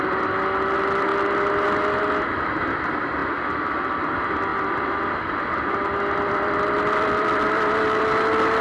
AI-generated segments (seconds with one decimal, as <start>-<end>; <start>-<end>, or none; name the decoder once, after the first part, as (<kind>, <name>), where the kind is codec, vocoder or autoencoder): 4.5-8.1 (vocoder, BigVGAN v2)